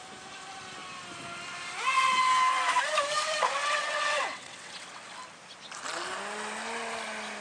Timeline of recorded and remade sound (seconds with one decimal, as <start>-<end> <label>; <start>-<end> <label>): 0.0-3.6 recorded; 3.6-5.0 remade; 5.0-7.4 recorded